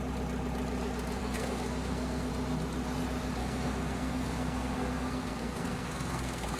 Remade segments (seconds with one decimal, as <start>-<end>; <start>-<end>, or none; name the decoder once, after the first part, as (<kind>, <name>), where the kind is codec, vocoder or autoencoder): 1.2-2.3 (codec, SNAC); 3.4-6.6